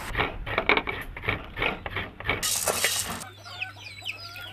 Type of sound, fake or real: real